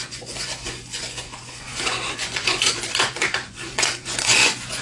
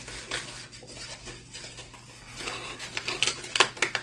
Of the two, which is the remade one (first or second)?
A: first